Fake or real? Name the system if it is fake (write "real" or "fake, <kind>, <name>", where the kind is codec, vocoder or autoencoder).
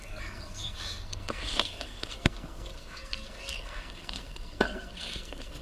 fake, codec, SNAC